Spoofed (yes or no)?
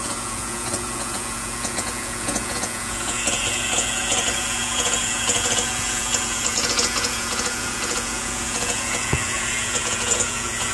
yes